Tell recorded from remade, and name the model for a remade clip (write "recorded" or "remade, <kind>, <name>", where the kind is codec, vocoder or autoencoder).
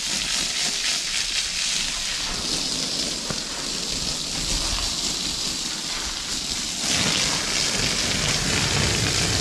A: recorded